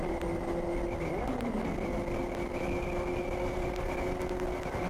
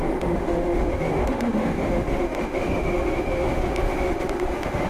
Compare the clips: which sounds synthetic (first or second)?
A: second